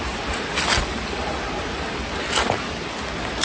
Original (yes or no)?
yes